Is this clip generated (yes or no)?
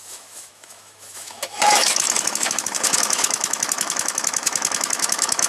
yes